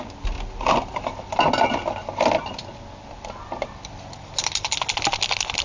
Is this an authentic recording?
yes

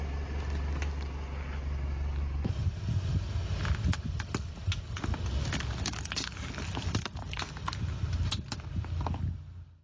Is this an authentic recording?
yes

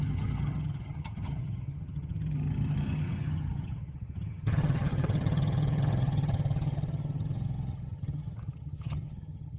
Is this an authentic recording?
no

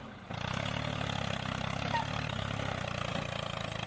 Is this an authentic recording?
yes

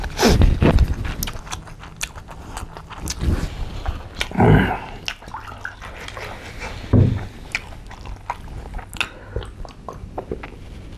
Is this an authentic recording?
yes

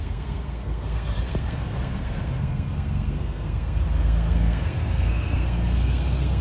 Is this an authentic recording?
no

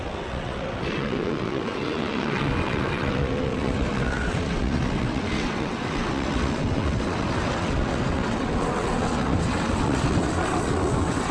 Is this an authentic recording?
no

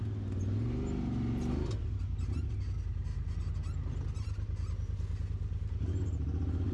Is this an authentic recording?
yes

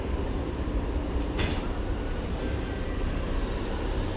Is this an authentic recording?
no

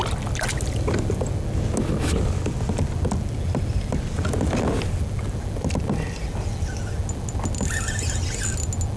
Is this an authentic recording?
yes